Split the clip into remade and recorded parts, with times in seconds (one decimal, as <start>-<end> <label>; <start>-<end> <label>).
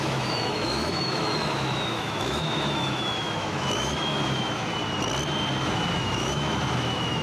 0.0-4.8 remade; 4.8-5.6 recorded; 5.6-7.2 remade